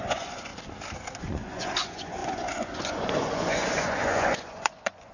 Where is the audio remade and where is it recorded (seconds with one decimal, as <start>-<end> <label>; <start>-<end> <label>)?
0.0-0.5 remade; 0.5-1.2 recorded; 1.2-5.1 remade